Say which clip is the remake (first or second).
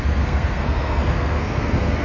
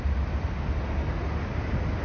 first